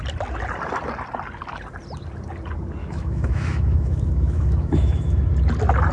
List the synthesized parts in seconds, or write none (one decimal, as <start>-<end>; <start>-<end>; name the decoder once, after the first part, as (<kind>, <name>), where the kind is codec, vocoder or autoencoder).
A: 2.8-5.2 (autoencoder, DAC-VAE)